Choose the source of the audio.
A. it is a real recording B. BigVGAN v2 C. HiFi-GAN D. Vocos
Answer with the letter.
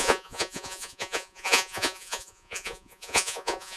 D